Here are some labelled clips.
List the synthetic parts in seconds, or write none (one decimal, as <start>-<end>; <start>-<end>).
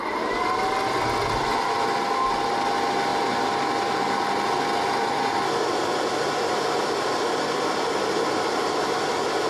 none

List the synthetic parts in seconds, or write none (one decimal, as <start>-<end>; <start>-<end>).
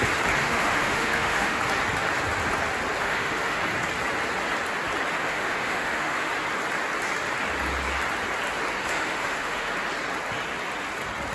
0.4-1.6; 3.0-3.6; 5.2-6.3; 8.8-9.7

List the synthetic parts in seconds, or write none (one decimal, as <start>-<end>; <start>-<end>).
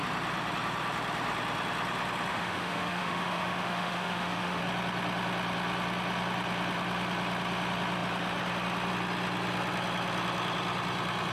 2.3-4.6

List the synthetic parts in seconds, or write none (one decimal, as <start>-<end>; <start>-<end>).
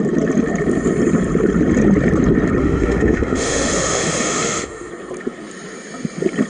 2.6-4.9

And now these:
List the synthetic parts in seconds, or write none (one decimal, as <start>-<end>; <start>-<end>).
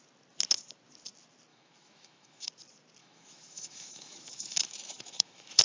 1.5-2.5; 3.0-5.6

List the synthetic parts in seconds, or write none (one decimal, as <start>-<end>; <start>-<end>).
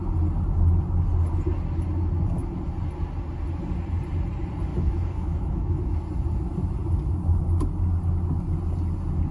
4.7-6.0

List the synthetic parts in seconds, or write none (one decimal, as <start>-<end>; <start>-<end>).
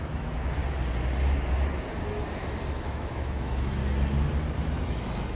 0.0-0.6; 2.7-3.8; 4.7-5.3